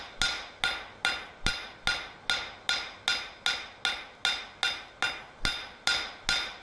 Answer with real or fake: real